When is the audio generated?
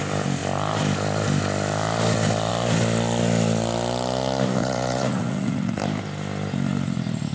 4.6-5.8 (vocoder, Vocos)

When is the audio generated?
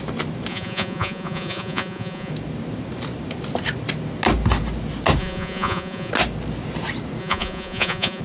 0.5-2.3 (vocoder, Vocos); 5.2-6.1; 7.2-8.2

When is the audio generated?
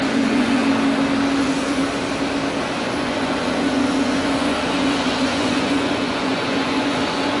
0.0-0.6 (vocoder, Vocos); 1.4-1.8; 2.6-7.4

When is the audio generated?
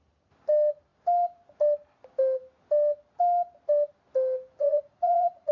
4.6-5.5 (vocoder, Vocos)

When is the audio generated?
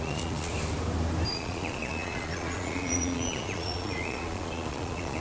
0.0-0.5 (vocoder, Vocos); 1.3-5.2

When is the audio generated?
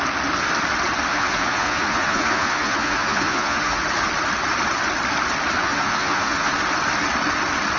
1.1-3.8 (vocoder, Vocos); 5.6-6.5